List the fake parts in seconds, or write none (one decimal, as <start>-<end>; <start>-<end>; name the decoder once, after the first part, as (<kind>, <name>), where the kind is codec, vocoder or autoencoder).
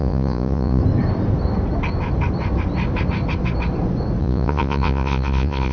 0.0-0.8 (vocoder, Vocos); 4.2-5.7